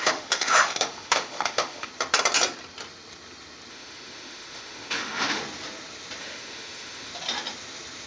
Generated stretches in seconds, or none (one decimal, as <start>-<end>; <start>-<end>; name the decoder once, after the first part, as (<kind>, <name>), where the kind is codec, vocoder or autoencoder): 0.0-1.9 (autoencoder, DAC-VAE); 3.7-5.4; 6.2-7.1